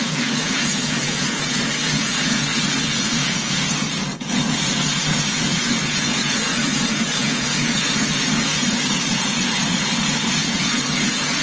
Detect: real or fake fake